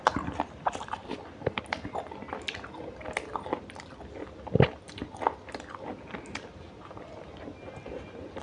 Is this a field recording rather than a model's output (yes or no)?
yes